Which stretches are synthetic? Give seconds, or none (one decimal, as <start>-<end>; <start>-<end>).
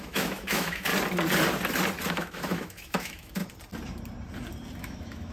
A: 0.0-0.9; 2.1-3.4; 4.8-5.3